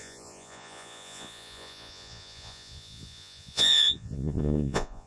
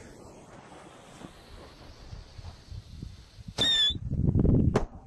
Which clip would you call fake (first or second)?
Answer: first